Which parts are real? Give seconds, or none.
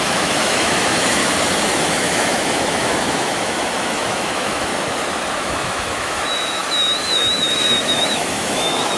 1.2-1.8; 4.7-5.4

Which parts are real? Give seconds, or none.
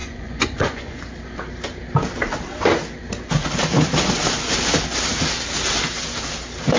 1.0-6.8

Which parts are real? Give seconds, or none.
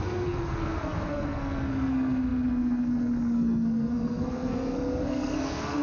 none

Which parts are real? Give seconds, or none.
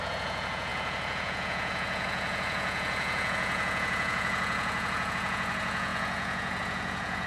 none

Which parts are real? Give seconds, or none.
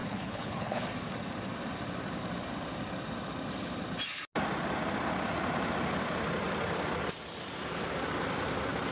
0.8-8.9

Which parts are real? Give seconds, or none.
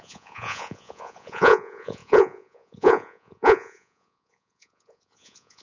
none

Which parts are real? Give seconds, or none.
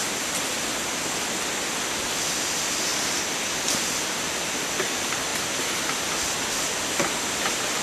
0.0-7.8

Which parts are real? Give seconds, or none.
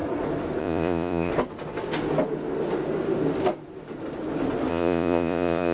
0.0-0.6; 1.3-4.7